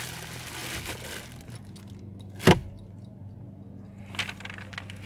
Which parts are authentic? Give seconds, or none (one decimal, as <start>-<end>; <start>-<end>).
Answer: 0.0-5.1